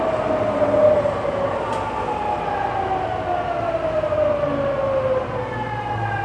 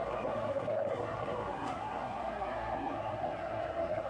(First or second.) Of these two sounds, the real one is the first